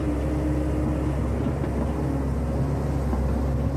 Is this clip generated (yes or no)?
no